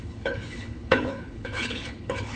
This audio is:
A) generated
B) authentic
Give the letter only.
A